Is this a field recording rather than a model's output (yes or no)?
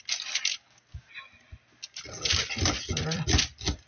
yes